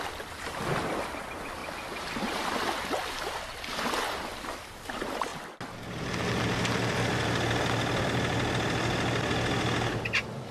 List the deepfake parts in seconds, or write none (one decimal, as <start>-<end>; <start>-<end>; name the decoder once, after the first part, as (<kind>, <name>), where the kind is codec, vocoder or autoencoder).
none